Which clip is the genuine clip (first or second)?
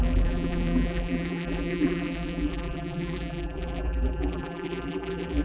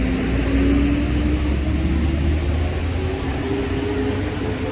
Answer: second